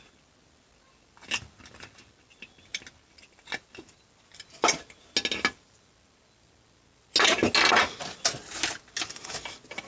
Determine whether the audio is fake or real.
real